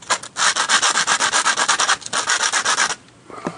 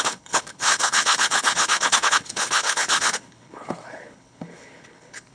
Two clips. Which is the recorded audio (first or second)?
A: first